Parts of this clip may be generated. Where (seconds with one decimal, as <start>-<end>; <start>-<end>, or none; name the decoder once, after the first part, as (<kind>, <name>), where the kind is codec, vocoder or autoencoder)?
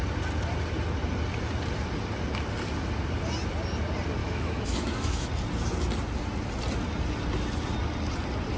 4.2-5.3 (autoencoder, DAC-VAE)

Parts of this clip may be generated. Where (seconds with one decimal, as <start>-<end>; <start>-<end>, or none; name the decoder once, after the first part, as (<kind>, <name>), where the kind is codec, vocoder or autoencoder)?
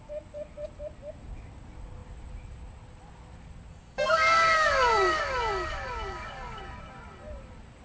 3.7-6.6 (codec, DAC)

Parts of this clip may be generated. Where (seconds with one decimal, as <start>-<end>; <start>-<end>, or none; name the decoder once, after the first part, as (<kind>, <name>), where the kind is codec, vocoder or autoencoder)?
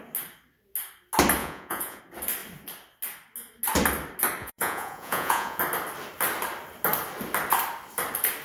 1.4-2.0 (vocoder, Vocos); 4.4-5.6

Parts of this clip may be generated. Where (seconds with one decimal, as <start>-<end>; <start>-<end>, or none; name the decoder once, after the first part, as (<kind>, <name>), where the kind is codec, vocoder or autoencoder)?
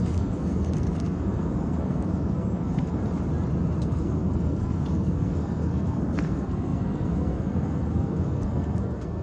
0.0-3.0 (codec, SNAC); 3.8-9.2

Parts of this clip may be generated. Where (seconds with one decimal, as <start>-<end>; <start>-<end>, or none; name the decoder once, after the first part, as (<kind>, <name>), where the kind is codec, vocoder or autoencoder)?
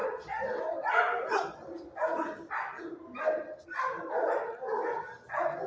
none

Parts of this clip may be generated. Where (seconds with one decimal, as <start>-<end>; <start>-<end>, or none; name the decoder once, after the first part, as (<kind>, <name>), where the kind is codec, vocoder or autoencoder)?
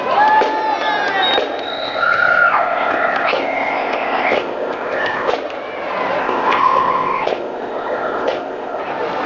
1.6-5.3 (codec, ZipCodec); 6.2-8.8